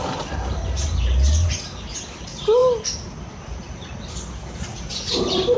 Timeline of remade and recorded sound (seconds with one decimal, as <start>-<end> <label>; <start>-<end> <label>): 0.0-5.6 recorded